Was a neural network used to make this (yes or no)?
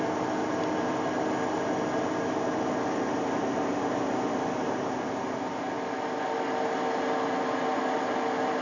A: no